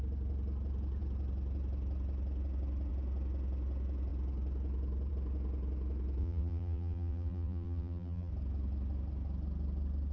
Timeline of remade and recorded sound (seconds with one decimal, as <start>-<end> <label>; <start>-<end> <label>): 0.0-6.2 recorded; 6.2-8.3 remade; 8.3-10.1 recorded